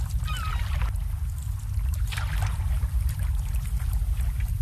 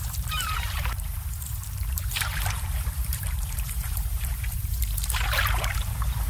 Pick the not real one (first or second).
second